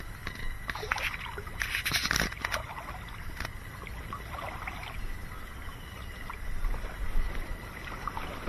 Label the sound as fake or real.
real